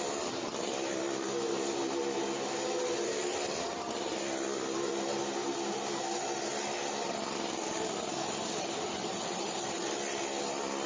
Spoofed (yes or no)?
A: no